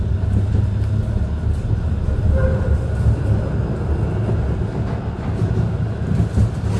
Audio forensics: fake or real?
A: real